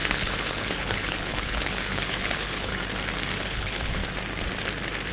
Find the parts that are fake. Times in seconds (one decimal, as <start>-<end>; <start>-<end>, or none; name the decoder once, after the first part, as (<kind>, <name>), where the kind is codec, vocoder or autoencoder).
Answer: 0.0-2.7 (codec, HILCodec); 3.4-4.0